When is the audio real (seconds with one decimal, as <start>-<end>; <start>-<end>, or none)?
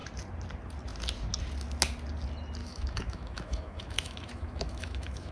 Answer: 0.0-2.6